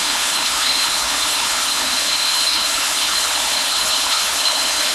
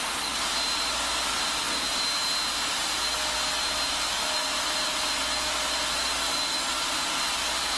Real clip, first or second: second